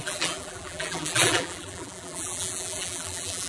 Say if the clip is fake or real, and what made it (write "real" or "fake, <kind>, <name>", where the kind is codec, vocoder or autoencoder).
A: fake, vocoder, BigVGAN v2